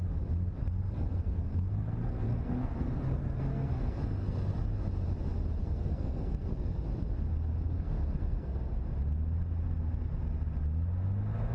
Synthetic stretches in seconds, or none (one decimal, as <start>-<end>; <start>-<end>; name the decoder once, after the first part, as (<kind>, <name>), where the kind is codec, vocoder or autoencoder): 0.6-4.6 (codec, SNAC); 5.6-6.8; 7.5-8.7